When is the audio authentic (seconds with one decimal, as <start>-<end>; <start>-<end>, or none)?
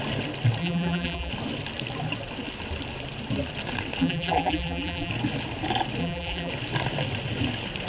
0.0-0.6; 1.3-4.0; 5.1-6.0; 6.5-7.9